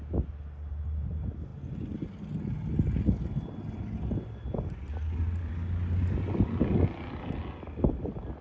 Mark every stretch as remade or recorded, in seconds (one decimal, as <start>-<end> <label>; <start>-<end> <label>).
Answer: 0.0-8.4 recorded